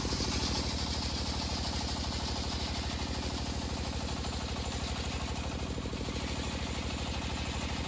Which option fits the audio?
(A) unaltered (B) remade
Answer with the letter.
A